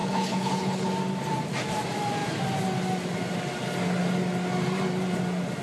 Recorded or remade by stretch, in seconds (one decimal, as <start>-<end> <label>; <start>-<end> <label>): 0.0-0.9 remade; 0.9-5.6 recorded